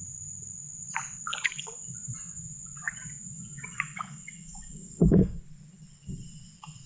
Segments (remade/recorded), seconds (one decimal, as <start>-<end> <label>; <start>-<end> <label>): 0.0-1.3 recorded; 1.3-5.4 remade; 5.4-6.9 recorded